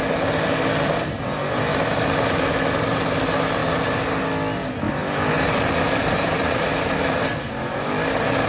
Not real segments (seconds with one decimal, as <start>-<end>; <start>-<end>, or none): none